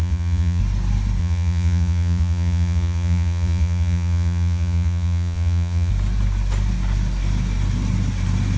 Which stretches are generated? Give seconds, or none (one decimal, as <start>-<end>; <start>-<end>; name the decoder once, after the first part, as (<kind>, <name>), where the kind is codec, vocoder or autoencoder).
0.0-0.6 (vocoder, Vocos); 1.2-5.9